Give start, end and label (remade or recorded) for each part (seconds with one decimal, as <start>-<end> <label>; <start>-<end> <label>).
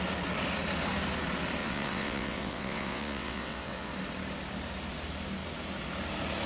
0.0-1.6 recorded; 1.6-3.9 remade; 3.9-6.5 recorded